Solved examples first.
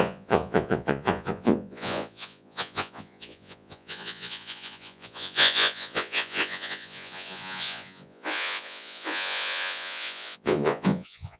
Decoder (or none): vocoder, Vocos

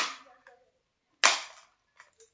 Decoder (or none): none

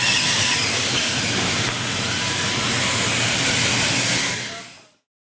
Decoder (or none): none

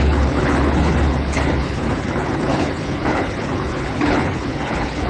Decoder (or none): codec, HILCodec